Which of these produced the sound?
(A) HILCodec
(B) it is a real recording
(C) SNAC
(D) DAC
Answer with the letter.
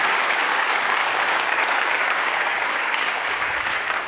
D